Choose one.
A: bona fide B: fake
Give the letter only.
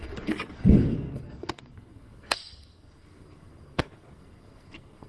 B